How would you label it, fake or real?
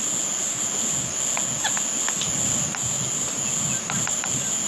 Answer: real